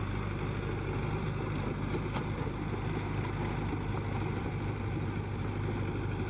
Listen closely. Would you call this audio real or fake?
real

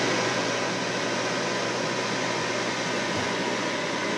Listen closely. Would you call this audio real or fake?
fake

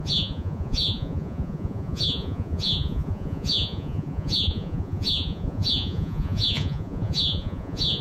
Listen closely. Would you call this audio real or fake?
fake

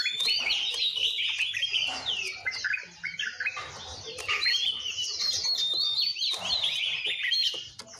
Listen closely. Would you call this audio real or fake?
real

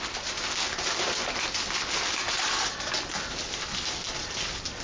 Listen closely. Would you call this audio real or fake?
real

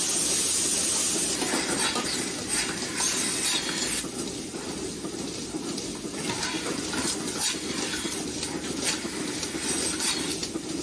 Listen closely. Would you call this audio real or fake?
real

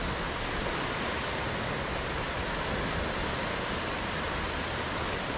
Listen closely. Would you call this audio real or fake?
real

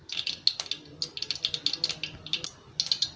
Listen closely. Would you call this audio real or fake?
real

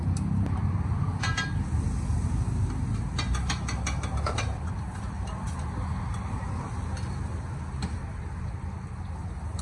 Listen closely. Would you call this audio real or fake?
real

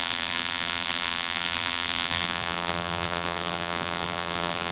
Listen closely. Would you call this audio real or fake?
fake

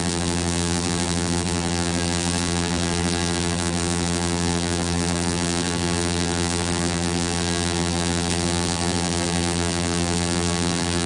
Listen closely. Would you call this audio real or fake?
fake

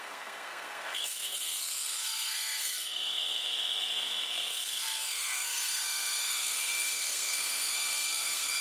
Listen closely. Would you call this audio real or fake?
fake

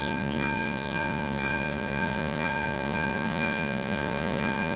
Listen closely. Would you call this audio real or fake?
fake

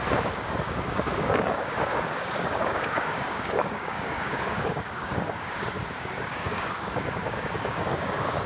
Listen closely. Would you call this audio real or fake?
fake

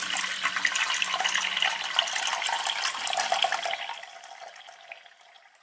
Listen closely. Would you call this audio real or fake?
real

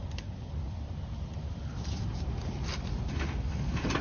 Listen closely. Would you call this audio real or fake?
real